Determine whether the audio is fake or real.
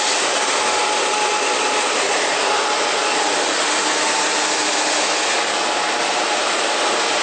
real